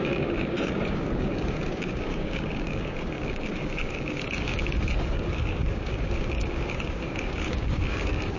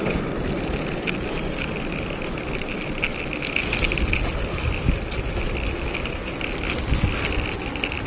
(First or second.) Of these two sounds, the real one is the second